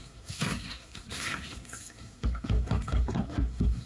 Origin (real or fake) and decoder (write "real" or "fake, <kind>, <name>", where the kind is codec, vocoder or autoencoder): fake, codec, SNAC